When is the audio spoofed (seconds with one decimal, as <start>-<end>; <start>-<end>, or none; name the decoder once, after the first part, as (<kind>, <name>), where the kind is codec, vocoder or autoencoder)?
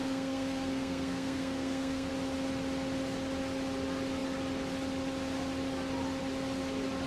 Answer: 0.0-2.1 (codec, SNAC)